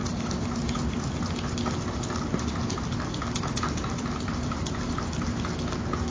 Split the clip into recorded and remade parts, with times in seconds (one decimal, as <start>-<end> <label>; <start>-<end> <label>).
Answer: 0.0-6.1 recorded